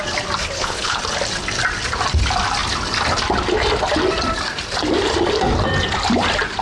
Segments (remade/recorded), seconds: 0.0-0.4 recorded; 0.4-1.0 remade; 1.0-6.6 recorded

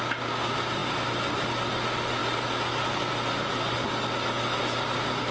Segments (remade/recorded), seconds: 0.0-5.3 recorded